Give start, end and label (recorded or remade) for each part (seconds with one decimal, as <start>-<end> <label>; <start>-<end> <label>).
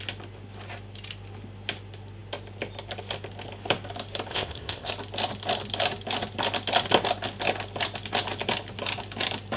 0.0-4.3 recorded; 4.3-4.9 remade; 4.9-9.6 recorded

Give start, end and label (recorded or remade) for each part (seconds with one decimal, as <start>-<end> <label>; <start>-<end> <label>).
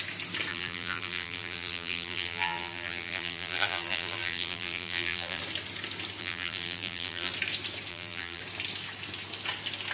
0.0-0.5 recorded; 0.5-5.4 remade; 5.4-6.2 recorded; 6.2-7.3 remade; 7.3-7.9 recorded; 7.9-8.4 remade; 8.4-9.9 recorded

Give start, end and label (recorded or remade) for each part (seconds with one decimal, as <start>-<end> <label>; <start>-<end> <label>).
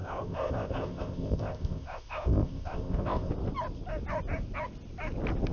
0.0-3.3 remade; 3.3-5.5 recorded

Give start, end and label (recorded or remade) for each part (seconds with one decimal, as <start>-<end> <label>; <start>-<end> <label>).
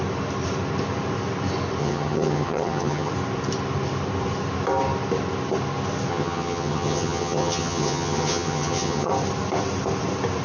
0.0-1.8 recorded; 1.8-3.1 remade; 3.1-6.1 recorded; 6.1-9.1 remade; 9.1-10.4 recorded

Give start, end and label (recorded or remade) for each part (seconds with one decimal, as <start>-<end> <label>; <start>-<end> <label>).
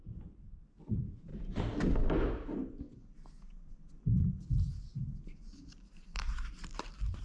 0.0-5.5 recorded; 5.5-7.2 remade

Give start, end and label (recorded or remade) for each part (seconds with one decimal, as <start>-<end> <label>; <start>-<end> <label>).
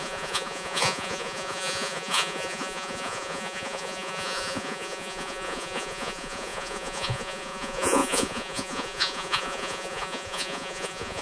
0.0-11.2 remade